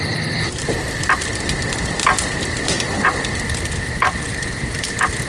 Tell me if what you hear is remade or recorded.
recorded